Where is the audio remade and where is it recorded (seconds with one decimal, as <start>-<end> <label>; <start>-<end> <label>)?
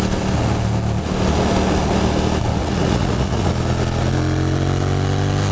0.0-2.6 recorded; 2.6-3.5 remade; 3.5-5.5 recorded